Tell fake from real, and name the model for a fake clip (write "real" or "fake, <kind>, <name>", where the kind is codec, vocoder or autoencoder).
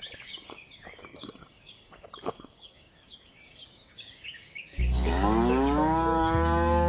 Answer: fake, codec, DAC